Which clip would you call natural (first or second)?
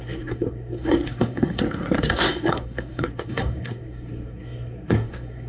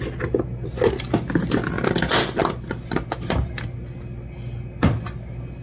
second